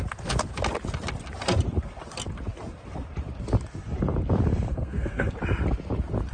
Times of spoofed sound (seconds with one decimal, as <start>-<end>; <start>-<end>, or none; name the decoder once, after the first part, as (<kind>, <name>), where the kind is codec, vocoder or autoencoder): 4.7-5.3 (codec, SNAC)